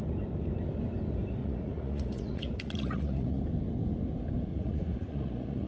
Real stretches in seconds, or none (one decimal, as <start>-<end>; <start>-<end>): 0.0-1.4; 3.4-4.5